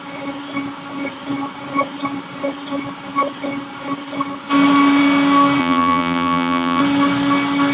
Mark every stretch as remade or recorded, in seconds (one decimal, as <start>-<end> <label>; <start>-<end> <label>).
0.0-5.6 recorded; 5.6-6.8 remade; 6.8-7.7 recorded